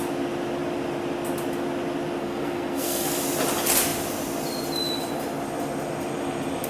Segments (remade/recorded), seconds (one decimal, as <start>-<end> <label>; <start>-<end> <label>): 0.0-2.2 recorded; 2.2-3.2 remade; 3.2-6.7 recorded